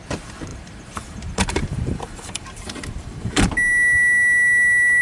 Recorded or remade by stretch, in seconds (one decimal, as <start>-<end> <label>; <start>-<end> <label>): 0.0-0.5 recorded; 0.5-3.5 remade; 3.5-5.0 recorded